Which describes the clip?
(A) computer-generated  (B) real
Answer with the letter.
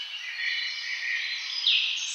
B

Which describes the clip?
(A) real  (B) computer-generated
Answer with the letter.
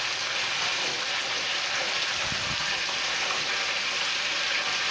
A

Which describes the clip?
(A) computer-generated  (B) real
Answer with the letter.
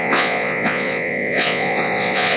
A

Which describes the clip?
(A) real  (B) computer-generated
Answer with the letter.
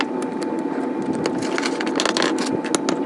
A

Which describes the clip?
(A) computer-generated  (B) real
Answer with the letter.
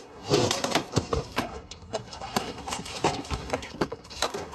A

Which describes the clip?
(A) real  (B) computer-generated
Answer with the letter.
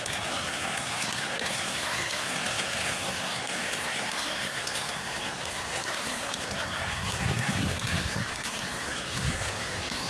B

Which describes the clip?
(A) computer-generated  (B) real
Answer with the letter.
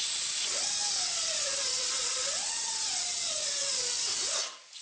A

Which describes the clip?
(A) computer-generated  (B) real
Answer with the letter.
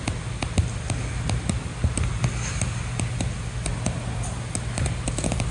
B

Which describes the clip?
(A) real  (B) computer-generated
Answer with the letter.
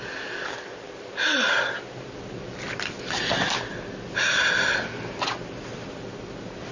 A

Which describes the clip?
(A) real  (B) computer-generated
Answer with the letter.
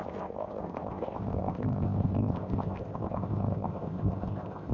B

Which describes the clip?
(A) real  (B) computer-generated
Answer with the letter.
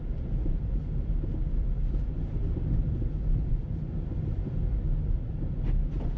A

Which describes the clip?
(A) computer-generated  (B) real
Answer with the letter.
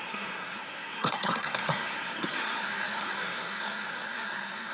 A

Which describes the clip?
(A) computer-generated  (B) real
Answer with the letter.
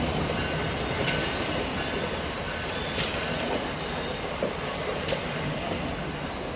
B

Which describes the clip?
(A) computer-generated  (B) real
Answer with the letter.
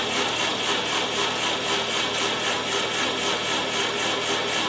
B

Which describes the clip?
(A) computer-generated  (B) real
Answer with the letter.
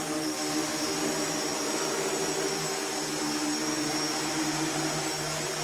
B